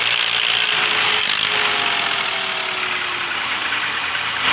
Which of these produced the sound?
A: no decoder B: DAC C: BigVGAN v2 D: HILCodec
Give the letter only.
A